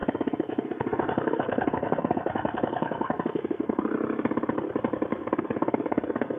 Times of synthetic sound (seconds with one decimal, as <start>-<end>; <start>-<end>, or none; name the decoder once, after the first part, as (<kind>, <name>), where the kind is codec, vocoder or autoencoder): 0.0-3.8 (codec, SNAC); 5.1-6.4